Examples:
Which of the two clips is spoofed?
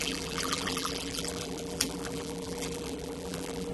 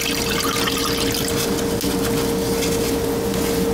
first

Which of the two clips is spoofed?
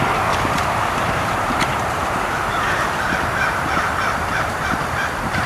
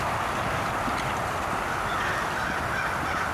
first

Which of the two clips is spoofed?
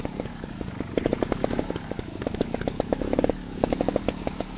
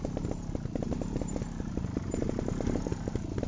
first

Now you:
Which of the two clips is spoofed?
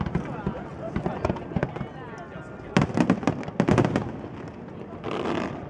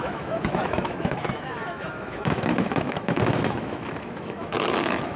second